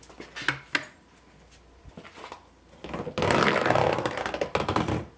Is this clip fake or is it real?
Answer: real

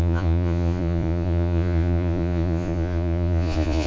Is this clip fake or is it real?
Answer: fake